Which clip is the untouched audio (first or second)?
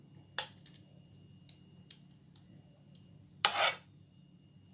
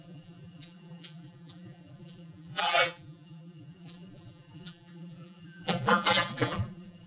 first